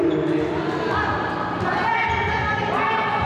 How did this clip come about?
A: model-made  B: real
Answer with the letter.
B